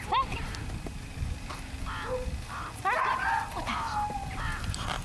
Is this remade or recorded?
recorded